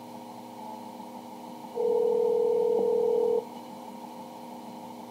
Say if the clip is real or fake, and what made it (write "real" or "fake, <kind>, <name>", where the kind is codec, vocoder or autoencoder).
real